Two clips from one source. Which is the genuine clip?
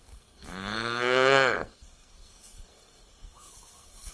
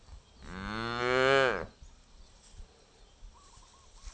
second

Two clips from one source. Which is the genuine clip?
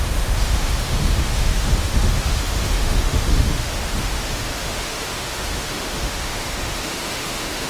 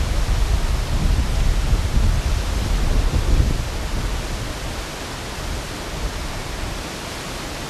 second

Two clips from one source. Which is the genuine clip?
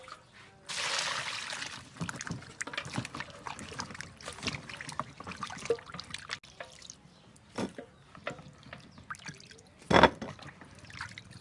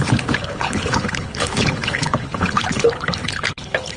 first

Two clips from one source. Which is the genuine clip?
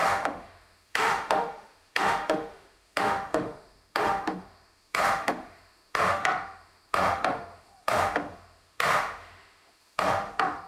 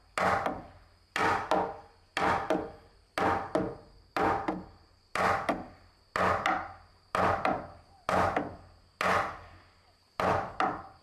second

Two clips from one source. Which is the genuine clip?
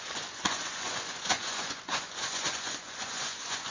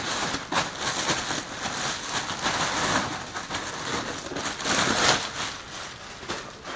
second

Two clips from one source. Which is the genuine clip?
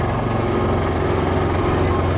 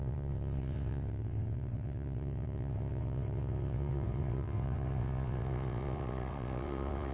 first